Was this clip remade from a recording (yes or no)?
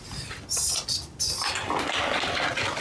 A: no